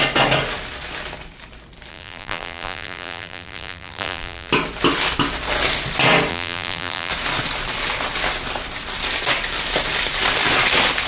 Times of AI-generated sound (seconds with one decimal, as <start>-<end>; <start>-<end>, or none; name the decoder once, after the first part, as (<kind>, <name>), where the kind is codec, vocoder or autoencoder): 1.9-4.5 (vocoder, BigVGAN v2); 6.3-7.1